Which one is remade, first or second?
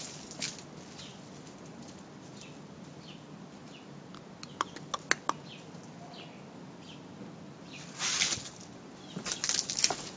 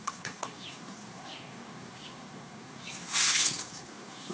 second